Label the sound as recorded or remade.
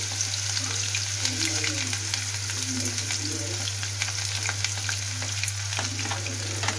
recorded